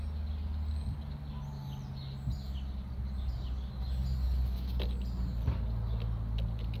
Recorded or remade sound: recorded